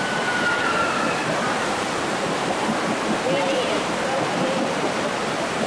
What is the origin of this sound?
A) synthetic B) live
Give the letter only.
A